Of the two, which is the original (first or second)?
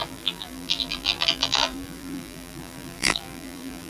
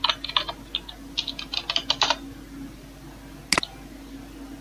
second